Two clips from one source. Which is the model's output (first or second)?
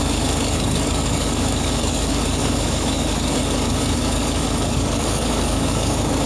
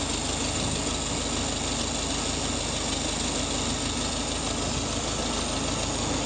first